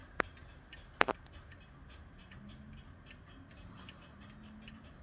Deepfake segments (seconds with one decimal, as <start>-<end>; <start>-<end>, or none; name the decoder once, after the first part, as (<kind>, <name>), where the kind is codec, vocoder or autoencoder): none